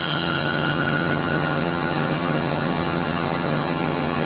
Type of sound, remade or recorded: remade